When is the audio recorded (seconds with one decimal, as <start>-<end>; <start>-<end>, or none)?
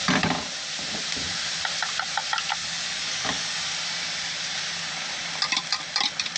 0.0-2.6; 3.6-6.4